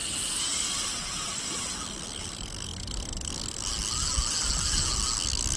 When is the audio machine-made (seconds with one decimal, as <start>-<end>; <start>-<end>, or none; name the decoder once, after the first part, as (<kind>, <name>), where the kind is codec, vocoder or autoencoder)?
none